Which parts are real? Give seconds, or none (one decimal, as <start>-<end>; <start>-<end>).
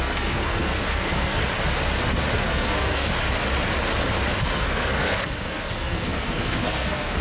1.4-2.4; 3.1-4.4